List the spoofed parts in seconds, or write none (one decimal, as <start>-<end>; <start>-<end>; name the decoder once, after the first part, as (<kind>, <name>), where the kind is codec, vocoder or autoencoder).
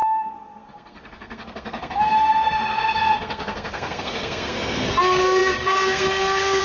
0.0-6.6 (codec, SNAC)